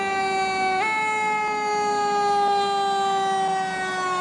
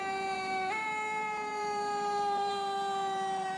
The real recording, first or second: first